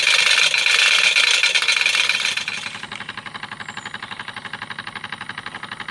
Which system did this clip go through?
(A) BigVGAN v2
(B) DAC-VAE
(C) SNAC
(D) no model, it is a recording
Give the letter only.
D